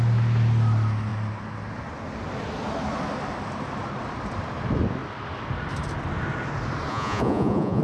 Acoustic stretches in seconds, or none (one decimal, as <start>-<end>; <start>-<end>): 0.0-6.9